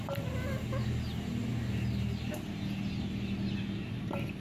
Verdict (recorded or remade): recorded